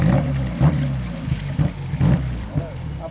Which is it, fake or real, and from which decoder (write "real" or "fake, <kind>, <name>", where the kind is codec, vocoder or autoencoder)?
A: fake, vocoder, BigVGAN v2